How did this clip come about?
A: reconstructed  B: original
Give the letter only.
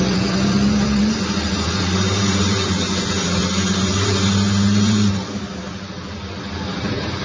A